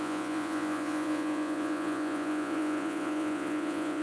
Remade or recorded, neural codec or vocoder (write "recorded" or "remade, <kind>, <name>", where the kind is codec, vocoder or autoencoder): remade, vocoder, Vocos